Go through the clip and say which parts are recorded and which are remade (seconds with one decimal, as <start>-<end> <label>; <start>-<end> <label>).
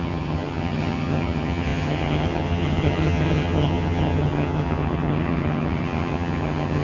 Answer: 0.0-6.8 remade